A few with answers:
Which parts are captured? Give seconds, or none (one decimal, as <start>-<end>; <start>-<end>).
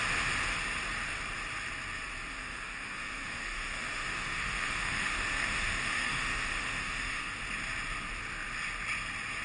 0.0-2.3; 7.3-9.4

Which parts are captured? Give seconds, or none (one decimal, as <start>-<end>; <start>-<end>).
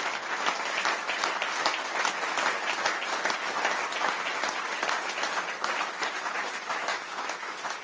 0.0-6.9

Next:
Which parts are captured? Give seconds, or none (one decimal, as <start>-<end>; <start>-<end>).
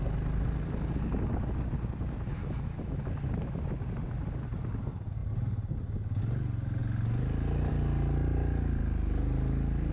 0.0-2.3; 3.0-9.9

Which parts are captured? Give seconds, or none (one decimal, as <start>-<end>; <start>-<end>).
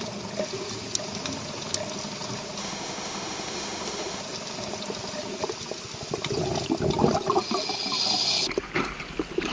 0.0-2.6; 4.2-9.5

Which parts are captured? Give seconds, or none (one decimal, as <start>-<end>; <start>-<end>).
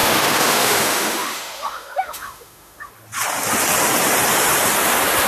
2.9-5.3